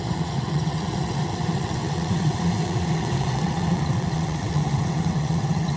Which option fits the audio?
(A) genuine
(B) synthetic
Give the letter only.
B